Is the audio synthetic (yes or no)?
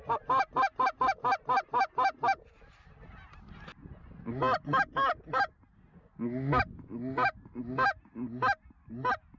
no